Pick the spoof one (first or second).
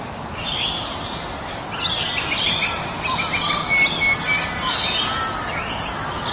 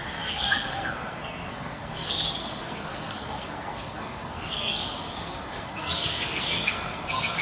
second